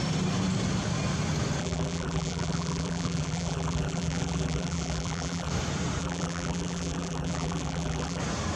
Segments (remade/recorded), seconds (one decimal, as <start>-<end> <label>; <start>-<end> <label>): 0.0-1.6 recorded; 1.6-5.5 remade; 5.5-6.0 recorded; 6.0-8.2 remade; 8.2-8.6 recorded

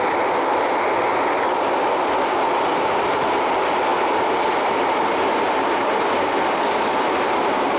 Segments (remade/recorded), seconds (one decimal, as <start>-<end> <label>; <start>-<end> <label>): 0.0-7.8 recorded

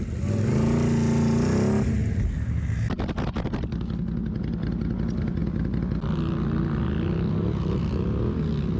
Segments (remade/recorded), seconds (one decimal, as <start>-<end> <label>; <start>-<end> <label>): 0.0-8.8 recorded

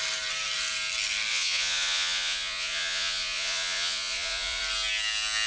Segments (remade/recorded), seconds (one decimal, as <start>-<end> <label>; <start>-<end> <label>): 0.0-1.3 recorded; 1.3-4.6 remade; 4.6-5.5 recorded

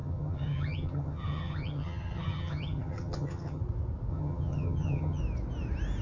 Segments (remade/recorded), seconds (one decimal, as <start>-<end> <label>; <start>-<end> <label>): 0.0-3.6 remade; 3.6-4.1 recorded; 4.1-5.2 remade; 5.2-6.0 recorded